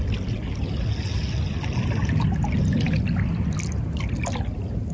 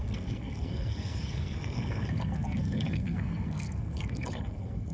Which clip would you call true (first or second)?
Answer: first